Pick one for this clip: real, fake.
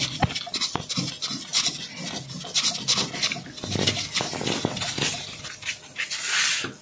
real